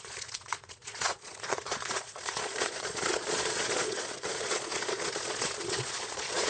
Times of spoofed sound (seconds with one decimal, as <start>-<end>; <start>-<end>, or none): 0.0-6.5